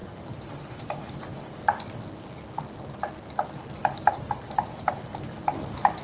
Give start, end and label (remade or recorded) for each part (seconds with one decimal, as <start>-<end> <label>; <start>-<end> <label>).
0.0-1.6 remade; 1.6-3.8 recorded; 3.8-4.9 remade; 4.9-6.0 recorded